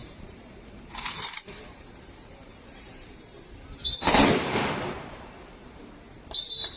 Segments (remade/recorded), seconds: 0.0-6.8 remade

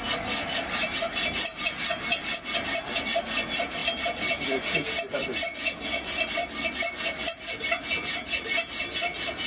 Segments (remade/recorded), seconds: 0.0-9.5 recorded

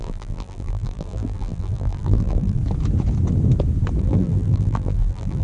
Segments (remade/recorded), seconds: 0.0-2.6 remade; 2.6-4.0 recorded; 4.0-5.4 remade

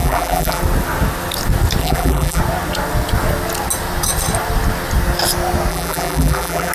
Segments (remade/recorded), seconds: 0.0-0.6 remade; 0.6-1.8 recorded; 1.8-2.4 remade; 2.4-5.7 recorded; 5.7-6.7 remade